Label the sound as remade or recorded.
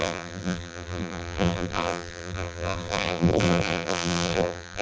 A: remade